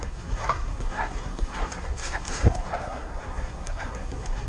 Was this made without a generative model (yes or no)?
no